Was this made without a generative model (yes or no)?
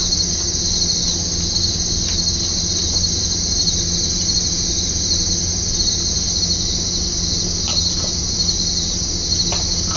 yes